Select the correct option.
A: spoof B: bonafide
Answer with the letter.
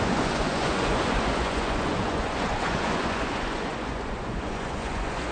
A